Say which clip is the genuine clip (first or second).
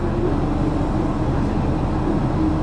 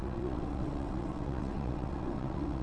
first